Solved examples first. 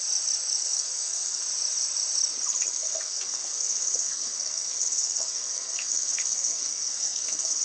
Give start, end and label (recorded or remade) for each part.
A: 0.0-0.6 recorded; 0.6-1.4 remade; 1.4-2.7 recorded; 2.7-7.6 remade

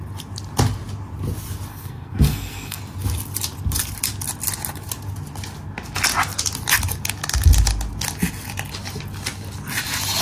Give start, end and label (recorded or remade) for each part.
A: 0.0-1.7 recorded; 1.7-2.8 remade; 2.8-10.2 recorded

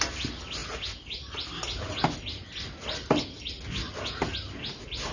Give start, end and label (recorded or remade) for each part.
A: 0.0-5.1 recorded